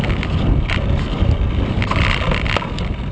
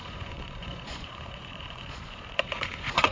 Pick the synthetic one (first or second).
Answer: second